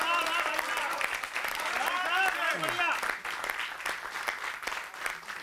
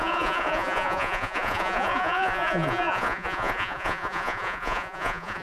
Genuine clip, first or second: first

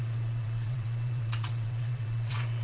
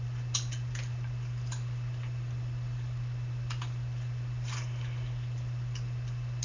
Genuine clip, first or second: second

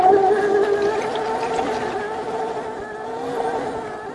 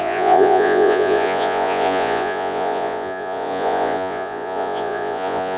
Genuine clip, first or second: first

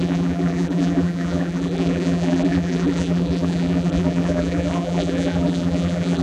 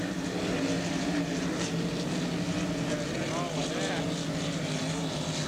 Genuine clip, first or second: second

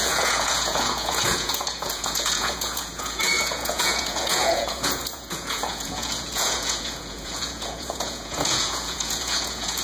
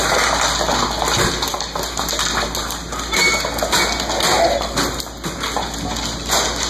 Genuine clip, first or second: second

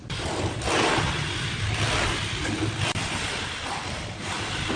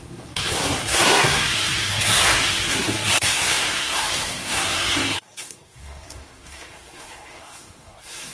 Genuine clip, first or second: first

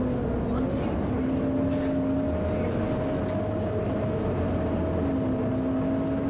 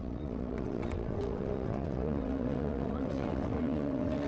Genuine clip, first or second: first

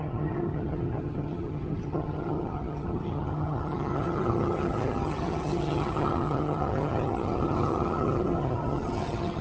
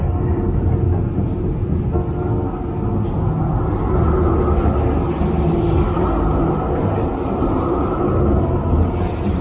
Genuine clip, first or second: second